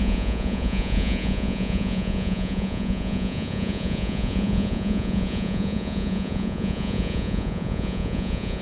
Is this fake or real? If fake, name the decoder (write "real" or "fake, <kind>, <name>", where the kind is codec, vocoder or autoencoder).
fake, vocoder, Vocos